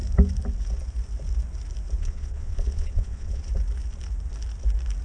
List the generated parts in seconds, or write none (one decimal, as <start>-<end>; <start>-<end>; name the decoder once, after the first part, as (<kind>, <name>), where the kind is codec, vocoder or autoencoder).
2.0-3.4 (vocoder, Vocos)